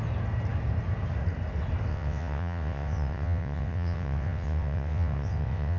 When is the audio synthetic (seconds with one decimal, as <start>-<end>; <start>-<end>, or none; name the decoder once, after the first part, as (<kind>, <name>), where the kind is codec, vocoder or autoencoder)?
1.9-5.8 (vocoder, WaveNeXt)